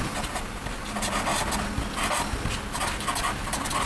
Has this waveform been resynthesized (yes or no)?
no